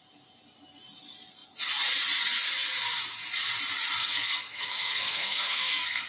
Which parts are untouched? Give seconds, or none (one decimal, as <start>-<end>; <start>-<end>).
0.0-4.0